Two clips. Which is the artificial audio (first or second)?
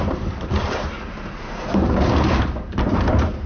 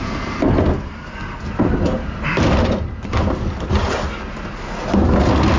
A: first